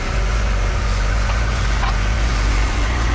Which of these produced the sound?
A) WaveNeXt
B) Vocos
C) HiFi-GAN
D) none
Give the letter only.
B